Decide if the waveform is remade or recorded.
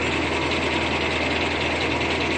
recorded